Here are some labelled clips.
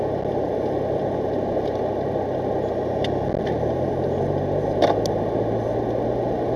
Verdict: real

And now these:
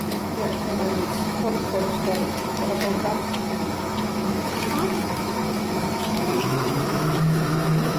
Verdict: fake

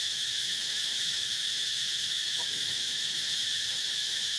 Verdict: fake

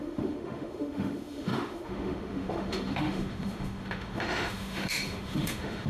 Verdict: fake